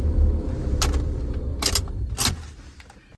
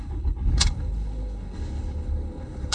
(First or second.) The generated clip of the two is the second